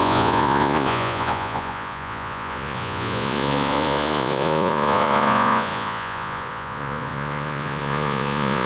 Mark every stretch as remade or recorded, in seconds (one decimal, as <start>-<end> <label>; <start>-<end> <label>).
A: 0.0-8.7 remade